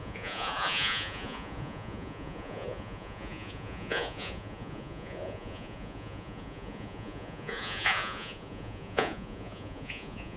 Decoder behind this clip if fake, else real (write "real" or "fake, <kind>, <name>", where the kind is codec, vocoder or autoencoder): fake, vocoder, Vocos